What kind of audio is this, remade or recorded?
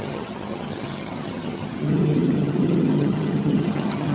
remade